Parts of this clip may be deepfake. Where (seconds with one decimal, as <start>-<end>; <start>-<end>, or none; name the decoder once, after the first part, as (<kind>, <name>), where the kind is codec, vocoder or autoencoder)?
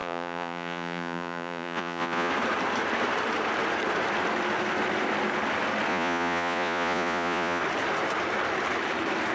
0.0-2.3 (vocoder, Vocos); 5.9-7.6